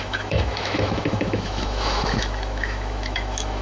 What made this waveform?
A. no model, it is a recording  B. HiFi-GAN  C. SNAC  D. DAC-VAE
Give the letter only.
D